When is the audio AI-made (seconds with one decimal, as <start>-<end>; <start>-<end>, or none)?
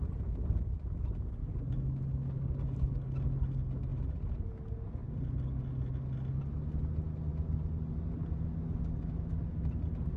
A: 1.4-3.1